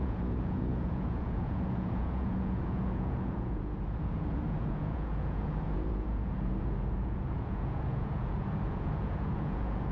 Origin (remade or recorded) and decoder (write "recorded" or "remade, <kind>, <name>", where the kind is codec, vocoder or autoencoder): remade, vocoder, Vocos